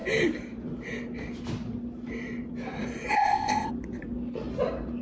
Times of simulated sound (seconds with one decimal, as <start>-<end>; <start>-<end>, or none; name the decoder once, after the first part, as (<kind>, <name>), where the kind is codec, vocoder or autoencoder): 3.1-3.7 (codec, ZipCodec)